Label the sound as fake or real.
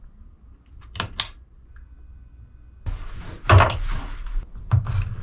real